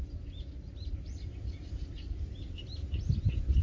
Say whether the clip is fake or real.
real